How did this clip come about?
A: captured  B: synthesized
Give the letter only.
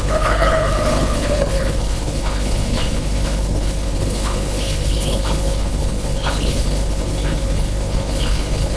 B